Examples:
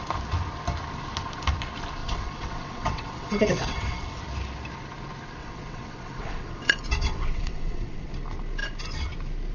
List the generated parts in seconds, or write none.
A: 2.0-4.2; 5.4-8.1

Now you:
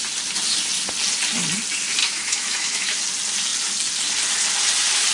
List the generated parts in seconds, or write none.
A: 2.0-3.0

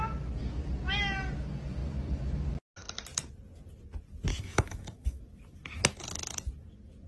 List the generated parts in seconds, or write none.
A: 4.3-5.2

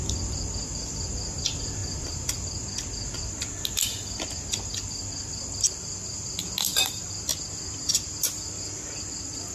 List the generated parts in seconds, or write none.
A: none

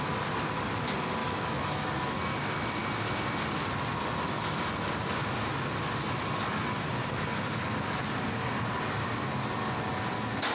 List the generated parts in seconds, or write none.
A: 1.2-1.9

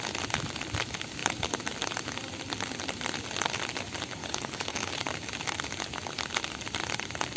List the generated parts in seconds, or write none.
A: 4.2-4.9

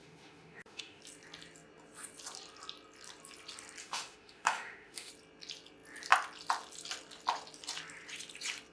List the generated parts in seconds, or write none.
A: 0.0-1.0; 3.8-5.1

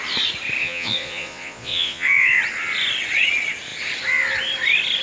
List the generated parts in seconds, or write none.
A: 0.6-2.4